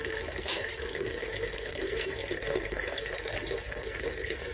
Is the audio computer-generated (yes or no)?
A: yes